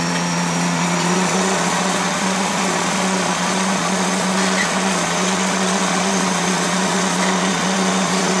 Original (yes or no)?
no